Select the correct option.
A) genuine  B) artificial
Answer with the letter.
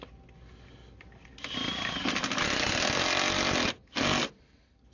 A